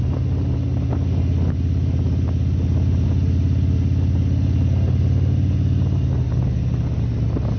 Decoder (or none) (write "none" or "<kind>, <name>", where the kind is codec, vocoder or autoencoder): none